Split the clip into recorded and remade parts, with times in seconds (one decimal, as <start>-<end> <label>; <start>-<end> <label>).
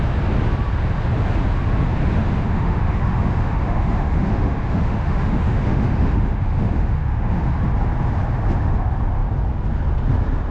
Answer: 0.0-2.2 recorded; 2.2-7.4 remade; 7.4-10.5 recorded